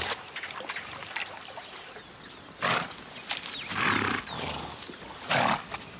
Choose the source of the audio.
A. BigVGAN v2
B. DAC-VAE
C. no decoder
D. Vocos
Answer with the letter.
C